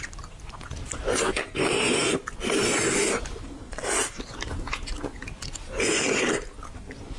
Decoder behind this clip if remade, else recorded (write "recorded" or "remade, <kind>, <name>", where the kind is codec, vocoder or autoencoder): recorded